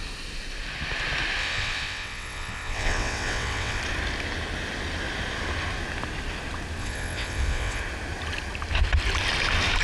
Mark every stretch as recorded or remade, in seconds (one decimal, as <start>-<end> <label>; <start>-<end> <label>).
0.0-1.4 recorded; 1.4-3.8 remade; 3.8-6.8 recorded; 6.8-7.8 remade; 7.8-9.8 recorded